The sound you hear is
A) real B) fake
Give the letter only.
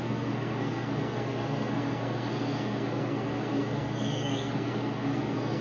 B